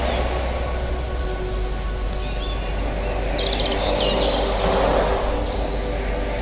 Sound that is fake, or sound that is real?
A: real